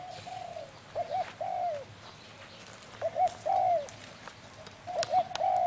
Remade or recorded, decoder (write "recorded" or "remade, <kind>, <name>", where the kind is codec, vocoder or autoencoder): recorded